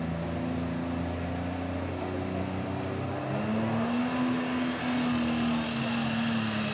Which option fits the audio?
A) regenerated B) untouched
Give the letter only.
B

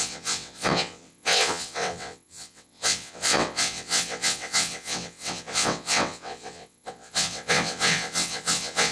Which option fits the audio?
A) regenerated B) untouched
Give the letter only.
A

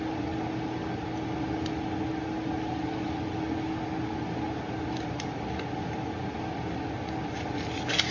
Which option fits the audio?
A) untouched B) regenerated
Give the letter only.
A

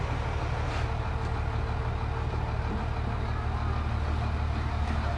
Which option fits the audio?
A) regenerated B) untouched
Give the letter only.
B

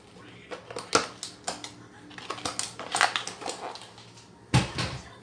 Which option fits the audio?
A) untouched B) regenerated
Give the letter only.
A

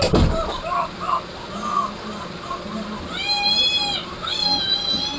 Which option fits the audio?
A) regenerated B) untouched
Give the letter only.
B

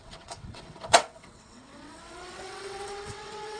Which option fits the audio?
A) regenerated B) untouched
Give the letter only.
A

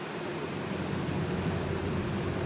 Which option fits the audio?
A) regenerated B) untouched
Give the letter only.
B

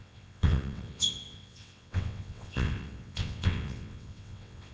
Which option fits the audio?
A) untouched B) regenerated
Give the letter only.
B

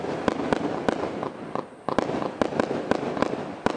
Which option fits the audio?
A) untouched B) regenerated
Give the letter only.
A